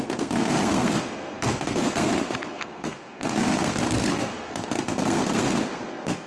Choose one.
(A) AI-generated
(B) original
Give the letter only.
A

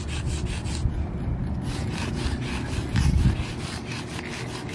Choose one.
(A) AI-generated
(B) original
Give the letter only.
B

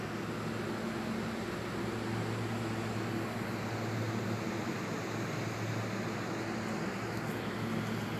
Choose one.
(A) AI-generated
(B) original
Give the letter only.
B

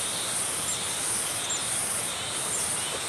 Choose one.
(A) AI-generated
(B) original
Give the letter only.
B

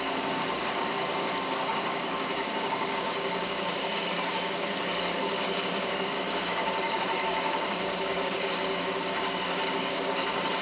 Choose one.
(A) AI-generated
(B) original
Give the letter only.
A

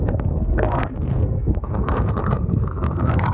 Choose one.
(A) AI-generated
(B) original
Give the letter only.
A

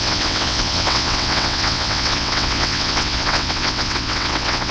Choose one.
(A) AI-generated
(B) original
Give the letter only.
A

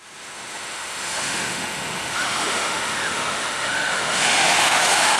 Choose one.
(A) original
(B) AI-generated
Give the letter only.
B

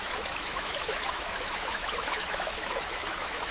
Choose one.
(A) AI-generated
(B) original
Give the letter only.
A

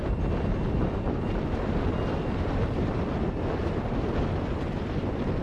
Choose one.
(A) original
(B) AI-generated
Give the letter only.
A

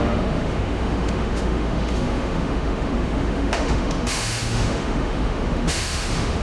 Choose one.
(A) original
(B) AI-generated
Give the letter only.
B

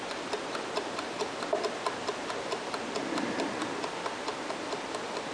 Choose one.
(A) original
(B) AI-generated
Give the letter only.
A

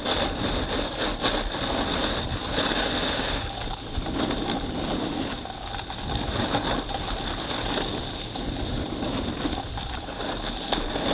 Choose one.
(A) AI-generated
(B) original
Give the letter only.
B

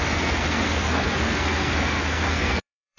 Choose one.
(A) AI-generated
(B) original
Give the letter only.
A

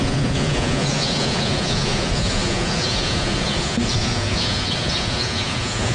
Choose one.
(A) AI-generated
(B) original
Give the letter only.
A